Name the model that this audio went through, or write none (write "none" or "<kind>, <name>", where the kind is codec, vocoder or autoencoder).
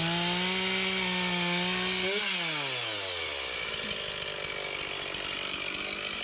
none